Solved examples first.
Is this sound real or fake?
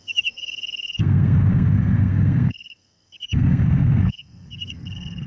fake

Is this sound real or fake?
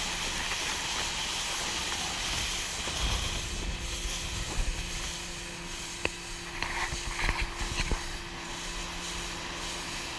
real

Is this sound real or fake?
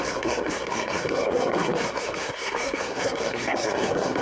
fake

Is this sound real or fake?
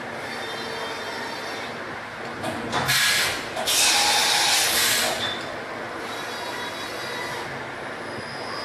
real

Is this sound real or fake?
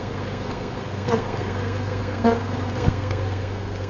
fake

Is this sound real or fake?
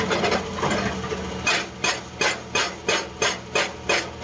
real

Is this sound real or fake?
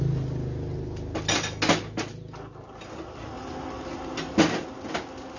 real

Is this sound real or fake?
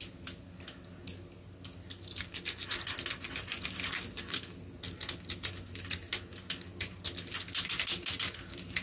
real